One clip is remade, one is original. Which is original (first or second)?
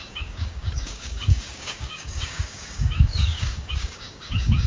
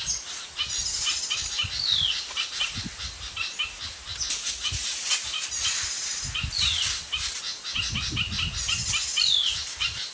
second